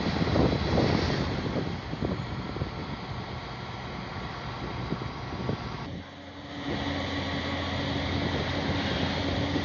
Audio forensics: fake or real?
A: real